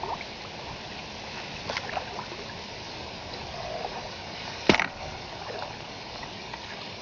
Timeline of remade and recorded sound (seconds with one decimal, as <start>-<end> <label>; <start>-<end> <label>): 0.0-2.7 recorded; 2.7-7.0 remade